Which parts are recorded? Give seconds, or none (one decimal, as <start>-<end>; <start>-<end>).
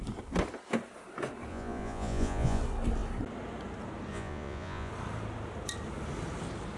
0.0-1.5; 2.6-4.1; 4.9-6.8